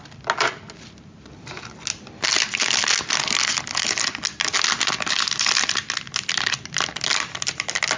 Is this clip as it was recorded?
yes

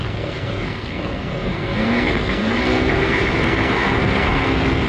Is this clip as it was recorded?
no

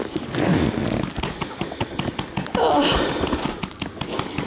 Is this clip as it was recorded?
yes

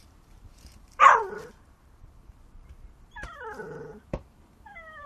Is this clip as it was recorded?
no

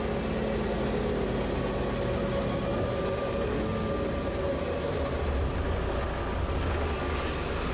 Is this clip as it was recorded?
yes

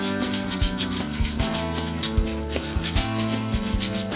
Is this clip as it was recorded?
no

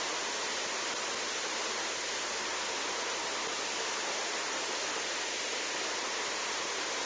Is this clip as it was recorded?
yes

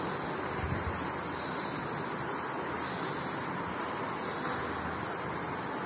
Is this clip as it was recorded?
yes